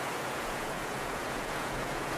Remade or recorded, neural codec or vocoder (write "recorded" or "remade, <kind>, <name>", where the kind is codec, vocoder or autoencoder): remade, vocoder, Vocos